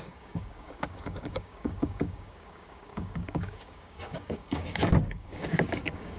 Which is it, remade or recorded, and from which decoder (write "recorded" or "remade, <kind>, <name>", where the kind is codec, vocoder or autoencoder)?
remade, codec, DAC